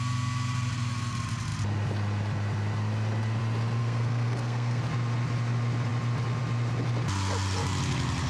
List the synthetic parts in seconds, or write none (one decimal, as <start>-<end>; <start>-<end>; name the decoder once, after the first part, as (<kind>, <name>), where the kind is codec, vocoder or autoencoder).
3.8-4.8 (codec, SNAC)